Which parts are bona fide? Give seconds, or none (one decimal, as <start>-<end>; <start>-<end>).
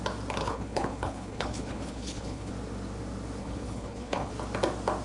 0.0-0.4; 2.5-3.4; 4.3-5.0